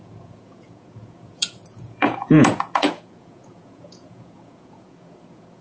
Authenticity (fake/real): fake